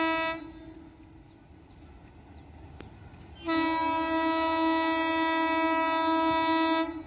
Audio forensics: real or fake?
real